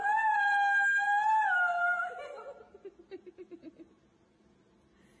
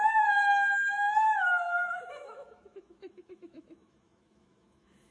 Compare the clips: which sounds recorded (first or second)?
first